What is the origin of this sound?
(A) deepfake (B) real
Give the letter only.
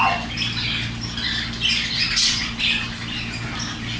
B